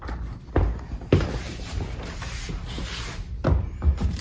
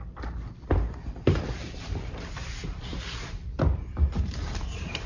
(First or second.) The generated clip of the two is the second